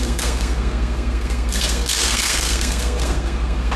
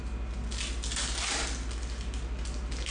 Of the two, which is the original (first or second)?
second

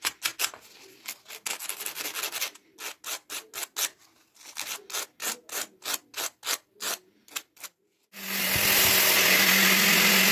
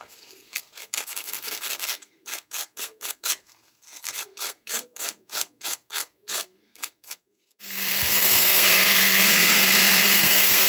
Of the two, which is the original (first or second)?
first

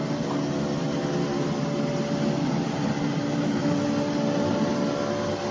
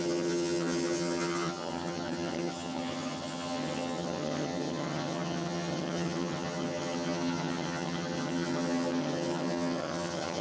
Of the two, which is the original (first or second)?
first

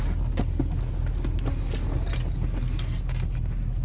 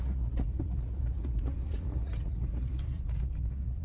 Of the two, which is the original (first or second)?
first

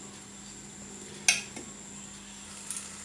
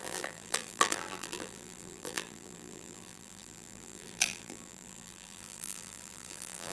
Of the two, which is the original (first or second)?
first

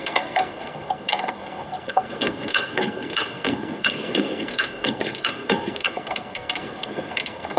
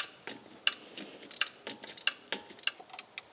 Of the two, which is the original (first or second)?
second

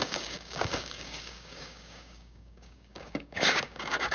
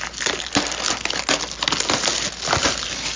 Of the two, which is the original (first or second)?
second